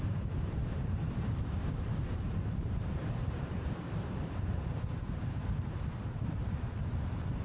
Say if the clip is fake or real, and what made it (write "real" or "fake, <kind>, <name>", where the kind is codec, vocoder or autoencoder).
fake, vocoder, BigVGAN v2